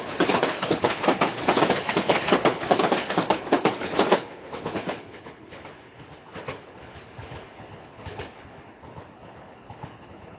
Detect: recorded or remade remade